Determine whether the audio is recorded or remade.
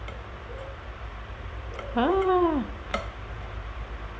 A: remade